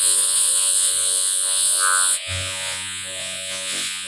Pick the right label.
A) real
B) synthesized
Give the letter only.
B